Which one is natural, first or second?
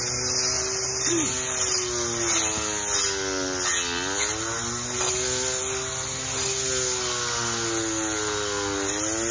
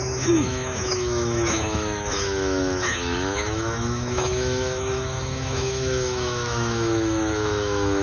first